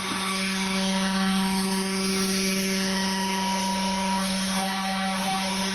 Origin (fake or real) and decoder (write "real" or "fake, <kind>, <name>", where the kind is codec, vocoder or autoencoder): fake, autoencoder, DAC-VAE